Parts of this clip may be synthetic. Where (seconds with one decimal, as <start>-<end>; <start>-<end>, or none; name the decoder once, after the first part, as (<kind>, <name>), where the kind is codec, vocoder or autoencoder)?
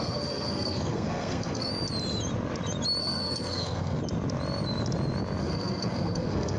0.0-1.7 (codec, SNAC); 3.0-4.0; 5.4-6.6